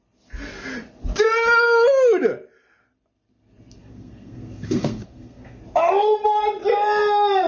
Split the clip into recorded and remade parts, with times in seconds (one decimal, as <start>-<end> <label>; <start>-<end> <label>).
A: 0.0-3.8 recorded; 3.8-5.6 remade; 5.6-7.5 recorded